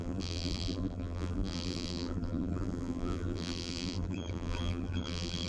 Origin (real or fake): fake